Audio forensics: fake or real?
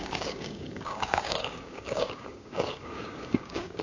fake